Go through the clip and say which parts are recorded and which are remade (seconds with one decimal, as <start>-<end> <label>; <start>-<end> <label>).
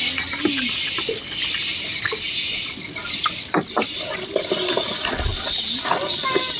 0.0-6.6 recorded